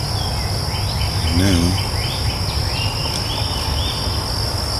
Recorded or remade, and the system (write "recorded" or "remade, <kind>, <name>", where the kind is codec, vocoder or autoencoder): recorded